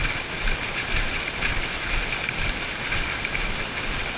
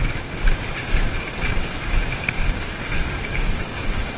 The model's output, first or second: second